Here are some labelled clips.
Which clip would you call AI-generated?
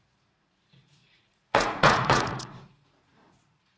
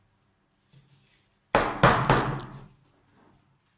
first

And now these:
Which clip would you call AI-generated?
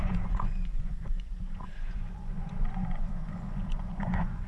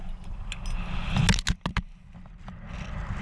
first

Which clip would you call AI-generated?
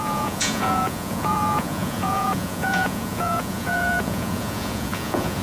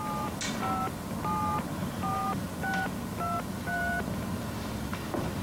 first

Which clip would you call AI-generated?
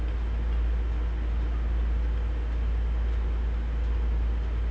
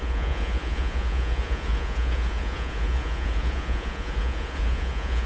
second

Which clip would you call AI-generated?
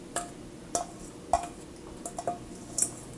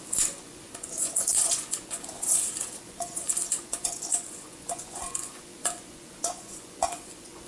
second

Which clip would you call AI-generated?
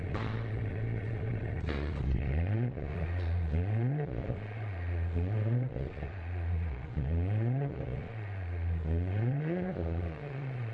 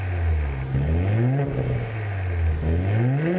first